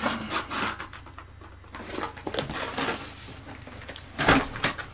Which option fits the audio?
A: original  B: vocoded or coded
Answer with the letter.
A